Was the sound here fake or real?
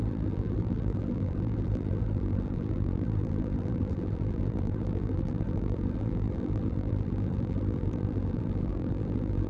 fake